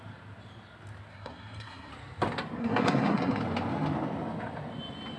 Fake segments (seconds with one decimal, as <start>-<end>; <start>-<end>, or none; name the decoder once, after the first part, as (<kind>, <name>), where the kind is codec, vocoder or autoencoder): 1.1-1.9 (codec, SNAC); 2.6-3.4